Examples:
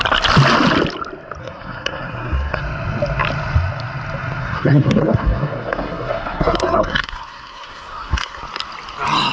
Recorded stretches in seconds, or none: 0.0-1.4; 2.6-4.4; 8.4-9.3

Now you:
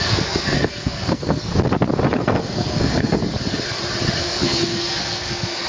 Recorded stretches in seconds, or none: 1.5-2.1; 3.2-4.2

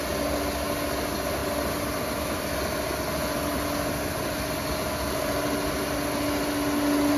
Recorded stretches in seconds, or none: 0.0-7.2

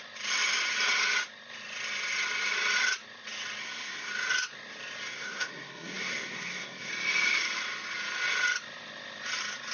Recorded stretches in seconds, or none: 0.0-3.6; 4.1-5.1; 6.9-9.7

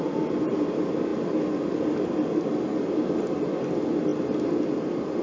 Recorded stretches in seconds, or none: 0.0-5.2

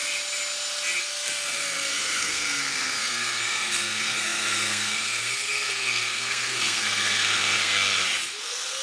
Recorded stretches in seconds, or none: 0.0-1.0; 7.9-8.4